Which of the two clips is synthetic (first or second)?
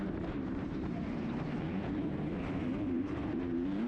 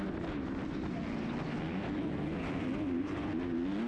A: first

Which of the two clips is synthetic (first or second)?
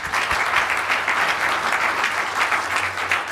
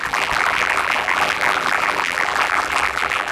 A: second